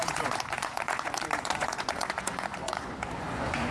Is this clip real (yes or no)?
no